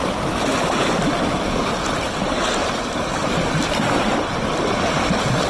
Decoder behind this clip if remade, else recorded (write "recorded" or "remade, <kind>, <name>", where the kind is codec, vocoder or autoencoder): recorded